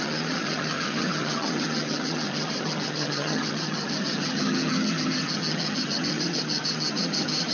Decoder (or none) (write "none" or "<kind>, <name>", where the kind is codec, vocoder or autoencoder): vocoder, HiFi-GAN